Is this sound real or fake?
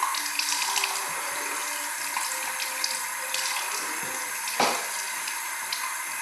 real